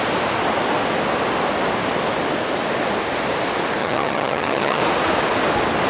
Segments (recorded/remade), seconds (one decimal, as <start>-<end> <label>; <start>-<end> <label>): 0.0-3.8 recorded; 3.8-4.8 remade; 4.8-5.9 recorded